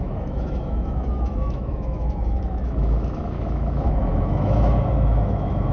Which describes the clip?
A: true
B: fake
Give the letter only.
B